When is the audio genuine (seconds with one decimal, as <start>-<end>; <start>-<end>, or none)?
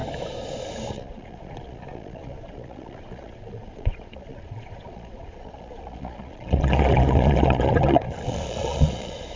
0.0-0.9